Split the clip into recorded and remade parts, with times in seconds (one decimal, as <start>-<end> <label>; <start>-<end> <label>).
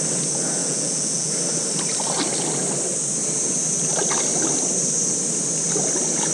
0.0-0.6 recorded; 0.6-1.3 remade; 1.3-6.3 recorded